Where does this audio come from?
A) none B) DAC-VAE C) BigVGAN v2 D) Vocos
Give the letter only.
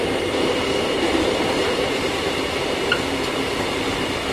C